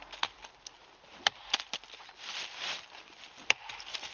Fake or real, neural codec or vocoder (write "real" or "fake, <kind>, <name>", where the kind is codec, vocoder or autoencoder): real